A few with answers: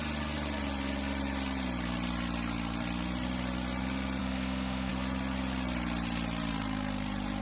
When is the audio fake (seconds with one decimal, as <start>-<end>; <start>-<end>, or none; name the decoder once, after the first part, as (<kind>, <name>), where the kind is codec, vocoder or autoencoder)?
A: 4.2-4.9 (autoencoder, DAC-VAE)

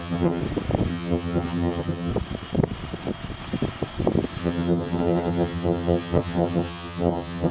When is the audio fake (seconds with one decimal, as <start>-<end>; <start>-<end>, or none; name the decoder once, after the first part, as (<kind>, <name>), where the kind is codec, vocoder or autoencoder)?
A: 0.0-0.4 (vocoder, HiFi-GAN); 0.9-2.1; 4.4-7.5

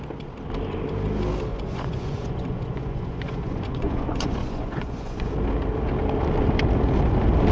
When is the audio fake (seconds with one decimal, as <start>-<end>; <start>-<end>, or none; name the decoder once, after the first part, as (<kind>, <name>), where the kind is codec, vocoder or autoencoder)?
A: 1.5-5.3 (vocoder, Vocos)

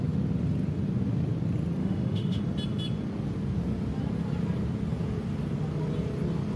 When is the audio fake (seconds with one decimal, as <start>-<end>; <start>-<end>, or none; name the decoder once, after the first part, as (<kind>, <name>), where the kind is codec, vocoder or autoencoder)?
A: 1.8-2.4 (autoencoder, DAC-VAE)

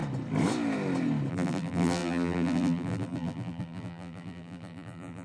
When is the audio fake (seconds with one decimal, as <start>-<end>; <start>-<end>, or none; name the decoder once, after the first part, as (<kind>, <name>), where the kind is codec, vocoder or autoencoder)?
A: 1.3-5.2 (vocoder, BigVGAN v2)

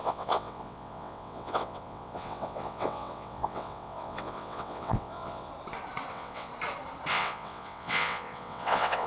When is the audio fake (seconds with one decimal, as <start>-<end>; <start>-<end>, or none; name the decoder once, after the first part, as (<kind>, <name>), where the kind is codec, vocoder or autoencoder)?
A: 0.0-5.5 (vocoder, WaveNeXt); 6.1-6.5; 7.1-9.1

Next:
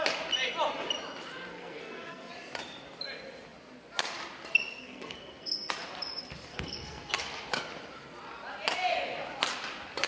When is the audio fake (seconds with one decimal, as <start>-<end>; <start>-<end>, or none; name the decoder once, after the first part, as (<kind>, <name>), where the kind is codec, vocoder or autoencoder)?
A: 1.5-2.3 (codec, SNAC); 4.8-5.7; 6.5-7.1